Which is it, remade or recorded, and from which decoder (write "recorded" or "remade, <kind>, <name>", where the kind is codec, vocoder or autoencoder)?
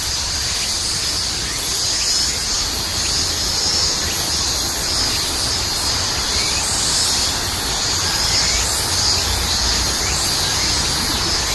recorded